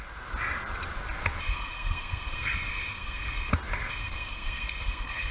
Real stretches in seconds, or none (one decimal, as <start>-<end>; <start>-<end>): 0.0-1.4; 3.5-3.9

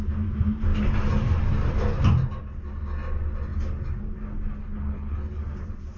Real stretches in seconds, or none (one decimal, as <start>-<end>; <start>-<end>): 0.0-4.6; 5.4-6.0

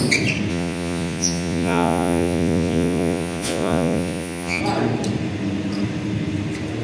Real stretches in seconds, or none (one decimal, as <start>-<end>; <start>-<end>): 0.0-0.5; 4.6-6.8